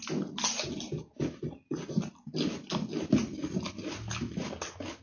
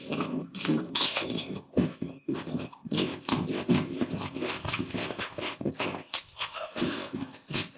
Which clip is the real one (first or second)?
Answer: first